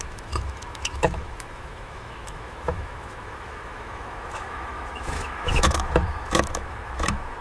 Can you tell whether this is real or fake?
fake